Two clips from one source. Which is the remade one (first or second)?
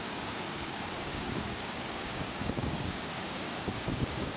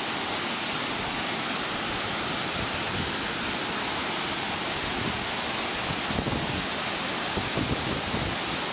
first